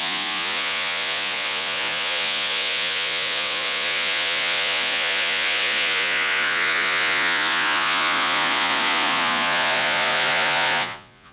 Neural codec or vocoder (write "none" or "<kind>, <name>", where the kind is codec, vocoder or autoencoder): vocoder, Vocos